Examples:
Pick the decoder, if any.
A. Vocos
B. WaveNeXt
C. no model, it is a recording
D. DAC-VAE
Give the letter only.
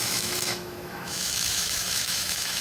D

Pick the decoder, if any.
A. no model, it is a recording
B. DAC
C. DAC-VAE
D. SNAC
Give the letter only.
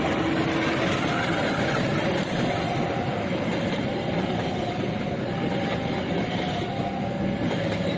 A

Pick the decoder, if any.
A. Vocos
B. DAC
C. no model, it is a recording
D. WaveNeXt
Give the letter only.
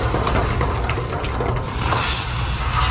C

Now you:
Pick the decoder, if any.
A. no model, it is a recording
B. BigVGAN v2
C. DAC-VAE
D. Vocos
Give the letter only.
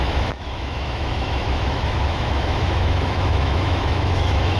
C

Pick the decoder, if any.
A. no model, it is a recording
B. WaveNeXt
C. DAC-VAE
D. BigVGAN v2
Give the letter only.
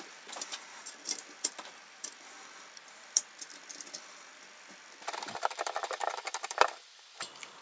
D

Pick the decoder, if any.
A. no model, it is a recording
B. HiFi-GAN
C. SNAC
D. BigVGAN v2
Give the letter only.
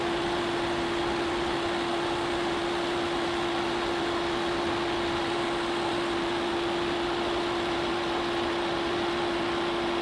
A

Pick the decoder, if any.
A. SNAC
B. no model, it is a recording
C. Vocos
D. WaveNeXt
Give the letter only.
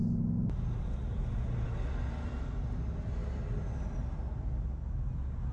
B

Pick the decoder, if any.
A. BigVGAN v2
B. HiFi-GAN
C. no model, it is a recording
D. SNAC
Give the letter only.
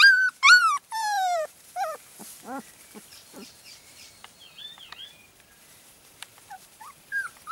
A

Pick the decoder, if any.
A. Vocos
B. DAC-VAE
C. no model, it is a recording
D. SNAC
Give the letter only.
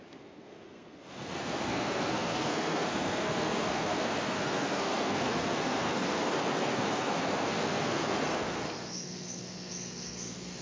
D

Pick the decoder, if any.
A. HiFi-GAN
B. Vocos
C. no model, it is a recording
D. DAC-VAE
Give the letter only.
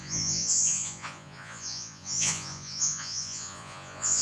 B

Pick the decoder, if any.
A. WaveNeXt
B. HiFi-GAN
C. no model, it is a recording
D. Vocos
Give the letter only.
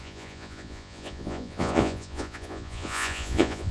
D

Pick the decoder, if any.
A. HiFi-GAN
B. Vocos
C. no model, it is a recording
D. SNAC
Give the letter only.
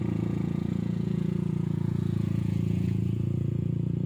B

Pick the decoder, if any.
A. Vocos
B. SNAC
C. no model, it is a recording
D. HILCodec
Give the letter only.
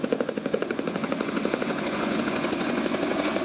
A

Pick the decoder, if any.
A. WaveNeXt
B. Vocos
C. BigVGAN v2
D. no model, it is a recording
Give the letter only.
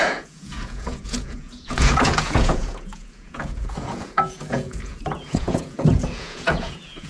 B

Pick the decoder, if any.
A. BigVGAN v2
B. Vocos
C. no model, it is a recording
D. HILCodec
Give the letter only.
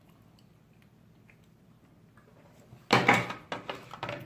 C